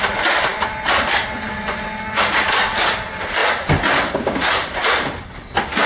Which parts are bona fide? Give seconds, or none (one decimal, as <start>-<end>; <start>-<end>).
0.0-5.9